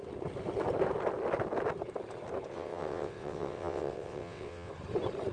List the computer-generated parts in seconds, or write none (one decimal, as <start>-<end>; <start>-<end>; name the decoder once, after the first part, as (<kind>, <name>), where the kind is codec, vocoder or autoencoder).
2.5-4.7 (vocoder, WaveNeXt)